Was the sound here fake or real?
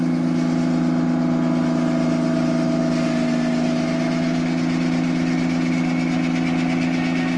real